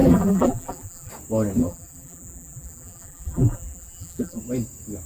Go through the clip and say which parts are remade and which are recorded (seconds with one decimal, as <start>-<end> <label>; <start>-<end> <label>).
0.0-1.1 remade; 1.1-1.6 recorded; 1.6-4.4 remade; 4.4-5.1 recorded